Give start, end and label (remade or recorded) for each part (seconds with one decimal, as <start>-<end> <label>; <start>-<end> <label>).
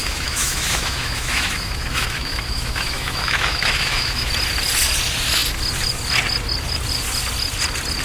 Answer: 0.0-4.3 remade; 4.3-8.0 recorded